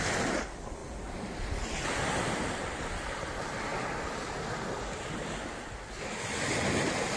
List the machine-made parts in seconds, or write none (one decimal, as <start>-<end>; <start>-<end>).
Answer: none